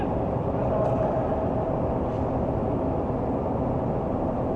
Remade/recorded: recorded